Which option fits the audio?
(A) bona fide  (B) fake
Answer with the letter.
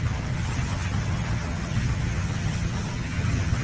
B